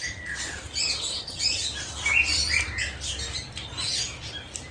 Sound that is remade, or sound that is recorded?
recorded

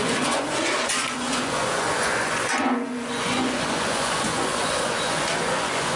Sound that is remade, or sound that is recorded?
remade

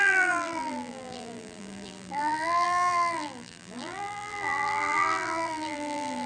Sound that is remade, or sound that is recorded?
remade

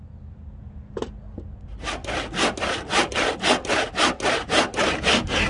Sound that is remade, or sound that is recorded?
recorded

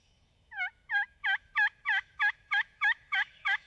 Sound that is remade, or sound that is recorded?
remade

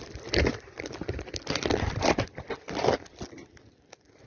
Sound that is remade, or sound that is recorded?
recorded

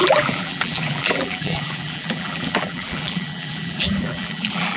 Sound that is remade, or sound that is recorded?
remade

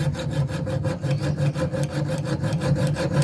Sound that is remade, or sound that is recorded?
recorded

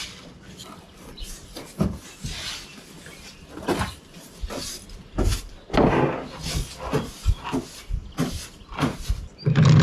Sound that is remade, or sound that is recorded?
recorded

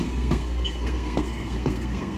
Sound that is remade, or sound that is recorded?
remade